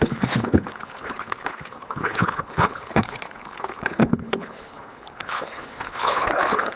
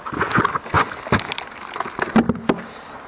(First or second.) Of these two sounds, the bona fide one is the second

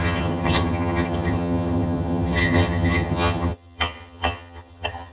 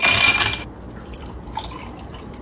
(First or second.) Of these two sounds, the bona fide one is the second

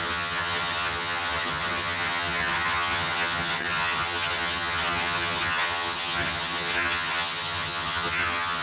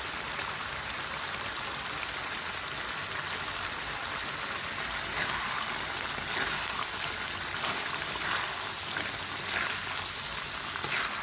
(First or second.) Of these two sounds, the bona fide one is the second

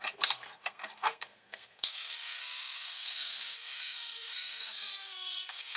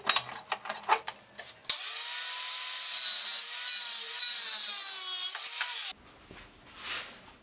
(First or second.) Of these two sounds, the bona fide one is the second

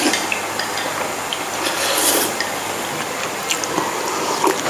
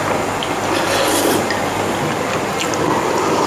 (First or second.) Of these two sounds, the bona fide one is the second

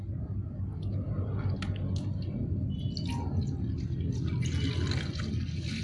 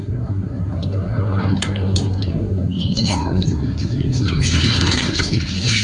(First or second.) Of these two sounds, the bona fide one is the first